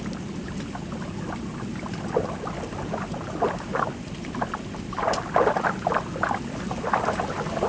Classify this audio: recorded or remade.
recorded